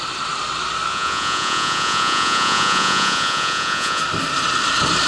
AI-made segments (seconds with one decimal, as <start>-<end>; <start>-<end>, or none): 0.9-4.0

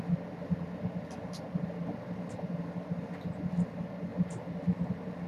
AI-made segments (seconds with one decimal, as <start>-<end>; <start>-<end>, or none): none

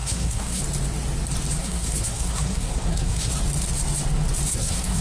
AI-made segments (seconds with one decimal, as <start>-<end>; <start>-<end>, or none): 0.0-0.6; 1.6-3.3; 4.5-5.0

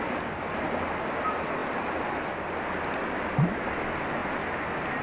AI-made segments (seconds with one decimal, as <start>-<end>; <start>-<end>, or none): none

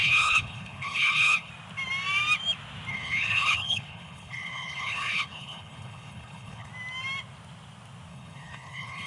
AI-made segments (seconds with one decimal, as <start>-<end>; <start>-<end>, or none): 0.0-1.5; 2.9-6.7; 8.1-9.1

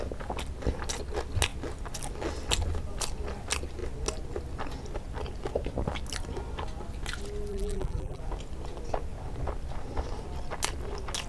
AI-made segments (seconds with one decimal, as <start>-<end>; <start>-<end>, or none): 7.5-8.2

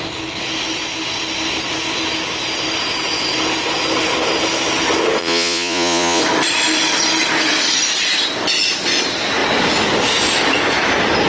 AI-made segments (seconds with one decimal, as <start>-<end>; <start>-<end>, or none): 5.2-6.2